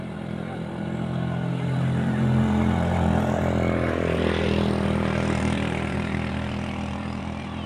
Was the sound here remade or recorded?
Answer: remade